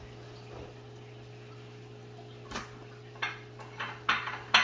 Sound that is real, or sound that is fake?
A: real